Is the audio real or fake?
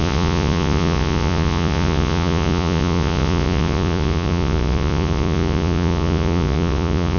fake